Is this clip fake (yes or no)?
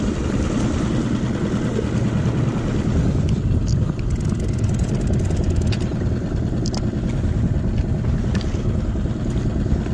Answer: no